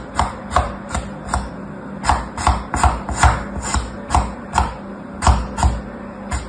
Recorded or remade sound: recorded